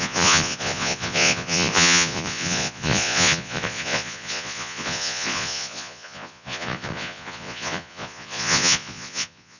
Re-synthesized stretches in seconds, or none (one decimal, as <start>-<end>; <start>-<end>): 0.0-9.6